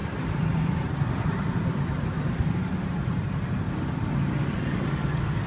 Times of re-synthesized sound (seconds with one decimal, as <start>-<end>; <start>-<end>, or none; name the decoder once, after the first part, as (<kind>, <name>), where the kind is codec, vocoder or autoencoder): 0.0-3.3 (vocoder, BigVGAN v2)